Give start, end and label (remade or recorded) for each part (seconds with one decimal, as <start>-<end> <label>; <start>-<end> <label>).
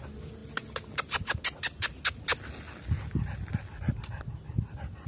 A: 0.0-5.1 recorded